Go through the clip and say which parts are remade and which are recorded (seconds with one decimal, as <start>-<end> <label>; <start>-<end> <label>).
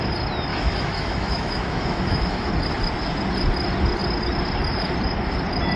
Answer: 0.0-0.5 recorded; 0.5-2.5 remade; 2.5-5.8 recorded